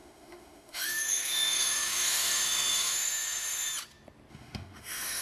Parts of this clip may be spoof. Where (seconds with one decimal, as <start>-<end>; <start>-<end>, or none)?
0.0-3.7; 4.3-5.2

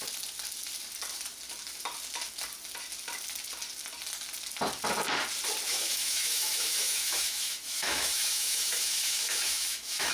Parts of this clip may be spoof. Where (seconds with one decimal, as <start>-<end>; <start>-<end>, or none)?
5.7-10.1

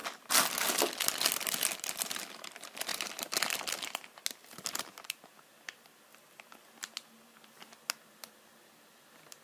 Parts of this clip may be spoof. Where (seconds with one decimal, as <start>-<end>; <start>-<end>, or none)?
none

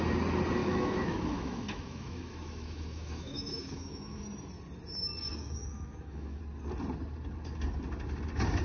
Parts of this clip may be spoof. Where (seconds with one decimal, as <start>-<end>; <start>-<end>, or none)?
0.6-4.2; 5.3-6.4